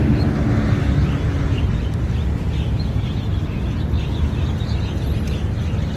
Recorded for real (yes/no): yes